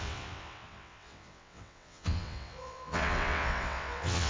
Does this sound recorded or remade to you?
remade